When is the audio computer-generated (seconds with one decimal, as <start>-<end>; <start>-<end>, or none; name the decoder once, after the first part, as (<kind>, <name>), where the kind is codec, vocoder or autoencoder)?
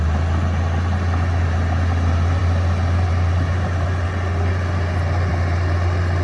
none